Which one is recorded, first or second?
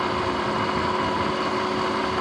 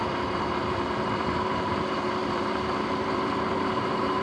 first